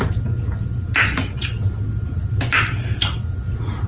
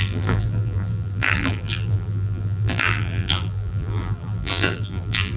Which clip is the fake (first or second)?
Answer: second